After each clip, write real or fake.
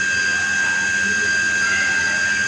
real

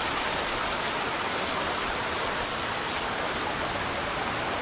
real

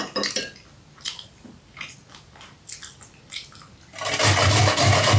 real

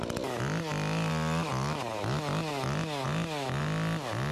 real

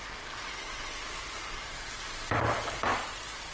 real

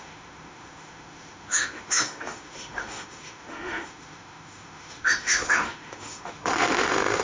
fake